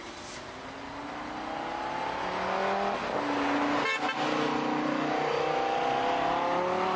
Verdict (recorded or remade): recorded